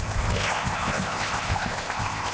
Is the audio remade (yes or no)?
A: yes